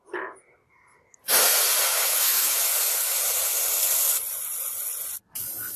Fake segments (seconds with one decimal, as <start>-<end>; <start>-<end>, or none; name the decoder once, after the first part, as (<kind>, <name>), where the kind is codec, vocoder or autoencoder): 1.9-2.6 (autoencoder, DAC-VAE)